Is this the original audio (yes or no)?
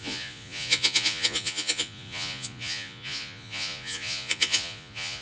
no